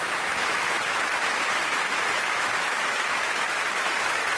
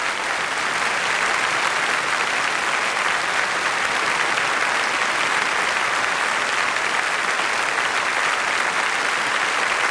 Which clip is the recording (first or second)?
second